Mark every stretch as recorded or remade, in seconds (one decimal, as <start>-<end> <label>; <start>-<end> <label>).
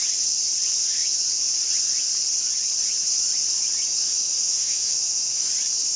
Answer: 0.0-3.9 recorded; 3.9-5.5 remade; 5.5-6.0 recorded